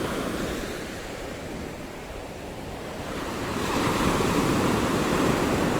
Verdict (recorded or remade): remade